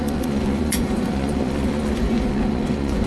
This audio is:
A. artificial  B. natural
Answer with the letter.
A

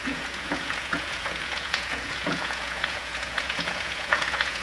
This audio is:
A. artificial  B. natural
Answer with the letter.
A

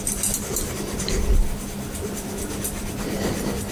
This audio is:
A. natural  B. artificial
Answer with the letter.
A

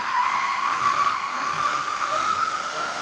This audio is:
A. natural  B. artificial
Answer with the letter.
B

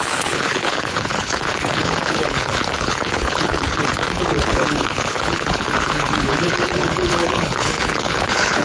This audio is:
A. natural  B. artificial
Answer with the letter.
B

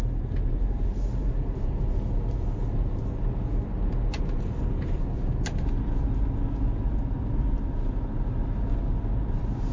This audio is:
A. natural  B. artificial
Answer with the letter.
A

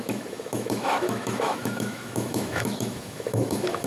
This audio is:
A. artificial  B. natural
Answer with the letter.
A